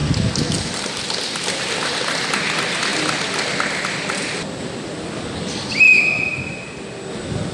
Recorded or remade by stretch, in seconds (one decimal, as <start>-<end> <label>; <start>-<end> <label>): 0.0-7.5 recorded